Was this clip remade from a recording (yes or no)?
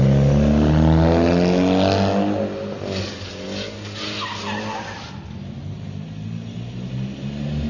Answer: no